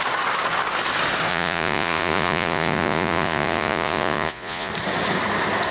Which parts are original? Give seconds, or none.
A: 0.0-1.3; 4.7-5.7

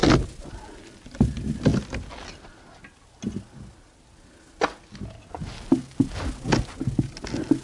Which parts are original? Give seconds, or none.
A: 0.0-7.6

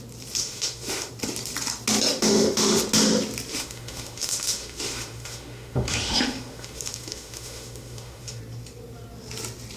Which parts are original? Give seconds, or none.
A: 0.0-0.4; 1.1-2.1; 2.8-3.5; 8.4-9.8

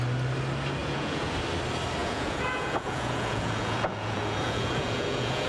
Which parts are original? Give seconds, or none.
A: 0.0-0.8; 1.3-2.0

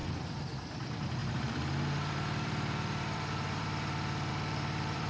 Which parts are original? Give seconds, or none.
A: 0.0-0.7

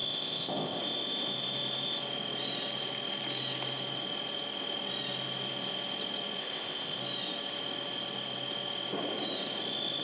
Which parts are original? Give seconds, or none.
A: 0.8-6.4; 7.0-10.0